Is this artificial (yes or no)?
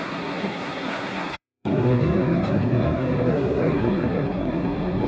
yes